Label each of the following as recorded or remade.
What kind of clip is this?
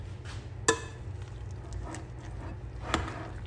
recorded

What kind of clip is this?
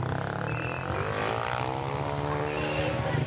recorded